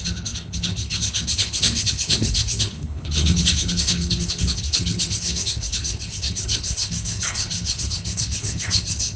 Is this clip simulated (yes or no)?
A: yes